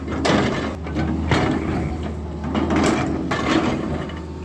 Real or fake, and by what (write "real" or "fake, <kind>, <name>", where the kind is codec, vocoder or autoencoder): real